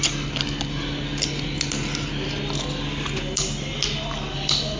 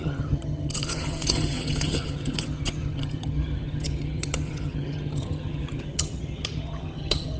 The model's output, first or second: second